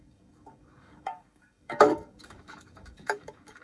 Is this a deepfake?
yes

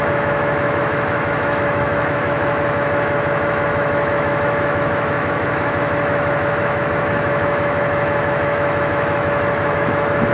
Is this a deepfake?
yes